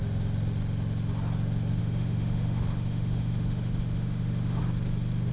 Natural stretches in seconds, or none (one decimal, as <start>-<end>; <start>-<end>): 0.0-1.8; 4.6-5.3